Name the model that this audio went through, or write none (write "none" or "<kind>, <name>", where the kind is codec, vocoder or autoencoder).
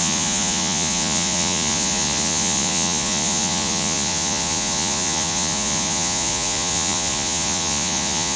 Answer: vocoder, Vocos